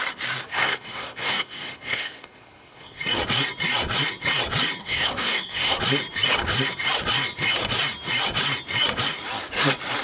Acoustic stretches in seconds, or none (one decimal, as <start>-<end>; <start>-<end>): 0.0-0.5; 3.0-4.8; 5.8-10.0